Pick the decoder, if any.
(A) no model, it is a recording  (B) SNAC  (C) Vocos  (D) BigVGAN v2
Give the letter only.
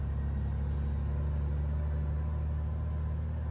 A